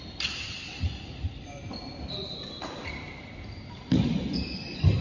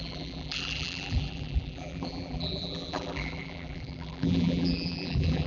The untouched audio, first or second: first